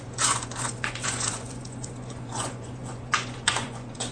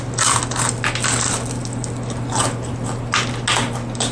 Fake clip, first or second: first